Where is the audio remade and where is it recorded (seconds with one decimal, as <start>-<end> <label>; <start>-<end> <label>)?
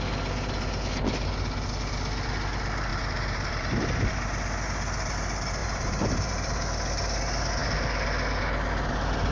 0.0-2.9 recorded; 2.9-4.1 remade; 4.1-5.6 recorded; 5.6-6.3 remade; 6.3-9.3 recorded